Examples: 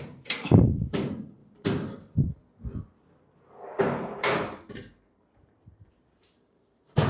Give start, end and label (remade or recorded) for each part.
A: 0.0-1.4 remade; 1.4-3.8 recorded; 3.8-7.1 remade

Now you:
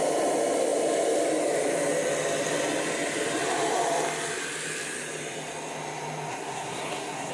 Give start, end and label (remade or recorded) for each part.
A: 0.0-6.3 recorded; 6.3-7.3 remade

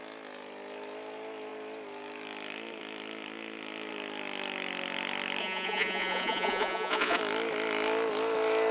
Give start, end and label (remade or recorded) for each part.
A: 0.0-5.4 recorded; 5.4-7.2 remade; 7.2-8.7 recorded